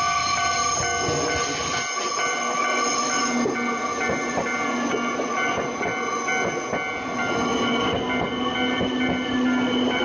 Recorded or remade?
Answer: recorded